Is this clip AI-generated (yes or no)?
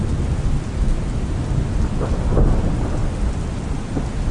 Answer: no